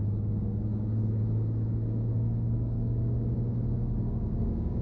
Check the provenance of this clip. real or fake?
fake